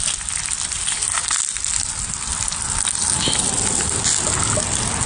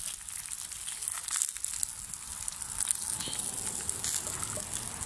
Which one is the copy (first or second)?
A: first